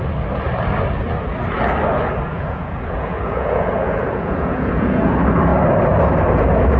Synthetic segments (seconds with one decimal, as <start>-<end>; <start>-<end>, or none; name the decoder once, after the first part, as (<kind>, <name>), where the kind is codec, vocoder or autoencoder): 2.3-5.0 (vocoder, Vocos)